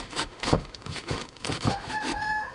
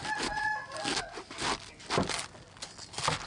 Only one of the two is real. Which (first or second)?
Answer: second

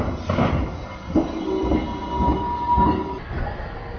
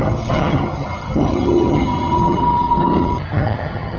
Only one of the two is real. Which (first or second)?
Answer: first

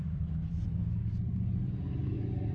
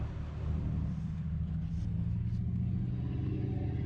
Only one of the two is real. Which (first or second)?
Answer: second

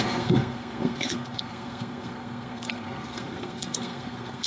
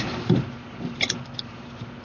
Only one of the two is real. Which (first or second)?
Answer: second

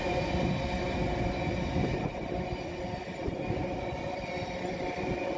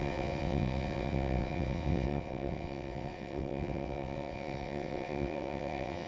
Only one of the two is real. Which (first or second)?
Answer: first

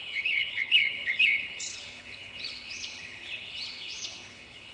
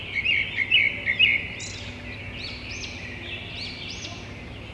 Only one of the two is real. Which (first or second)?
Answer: second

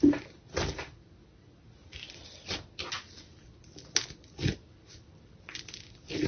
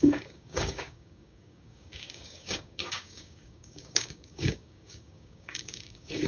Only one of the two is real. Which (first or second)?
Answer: first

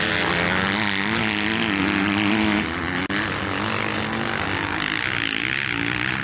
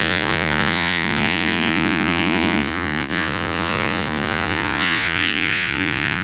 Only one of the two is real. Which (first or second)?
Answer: first